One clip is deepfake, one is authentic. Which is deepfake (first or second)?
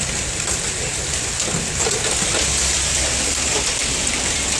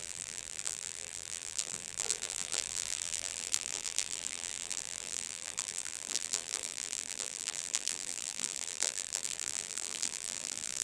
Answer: second